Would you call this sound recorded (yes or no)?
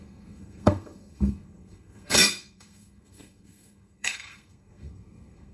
no